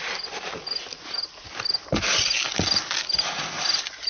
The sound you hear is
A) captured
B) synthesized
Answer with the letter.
A